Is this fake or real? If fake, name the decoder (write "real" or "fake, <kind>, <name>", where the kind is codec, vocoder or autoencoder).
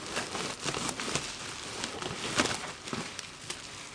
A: real